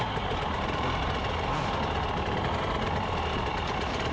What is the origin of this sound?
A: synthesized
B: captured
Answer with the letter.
B